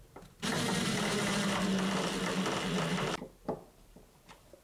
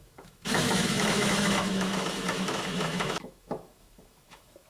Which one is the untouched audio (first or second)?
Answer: first